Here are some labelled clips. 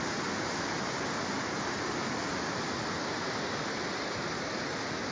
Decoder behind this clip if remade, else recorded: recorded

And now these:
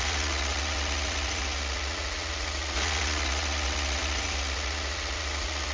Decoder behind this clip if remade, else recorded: remade, vocoder, Vocos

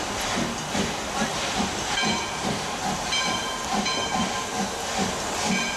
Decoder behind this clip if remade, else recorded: recorded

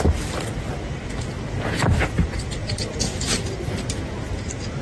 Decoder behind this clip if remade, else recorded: recorded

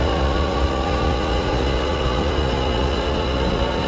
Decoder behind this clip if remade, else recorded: remade, vocoder, Vocos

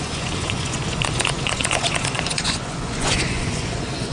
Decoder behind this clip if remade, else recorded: remade, vocoder, Vocos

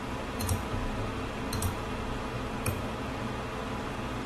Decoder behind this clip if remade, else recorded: recorded